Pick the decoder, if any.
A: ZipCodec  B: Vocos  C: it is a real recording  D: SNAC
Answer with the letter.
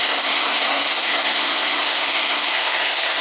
D